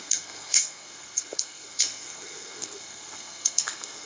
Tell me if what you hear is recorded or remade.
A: remade